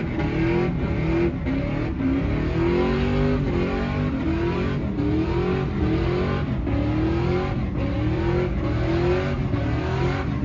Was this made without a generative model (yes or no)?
yes